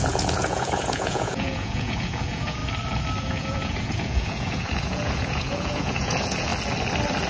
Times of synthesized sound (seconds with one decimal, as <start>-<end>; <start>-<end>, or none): 0.0-2.6; 3.2-6.5